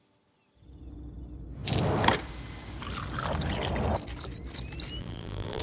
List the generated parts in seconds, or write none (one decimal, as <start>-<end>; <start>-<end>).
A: 5.0-5.6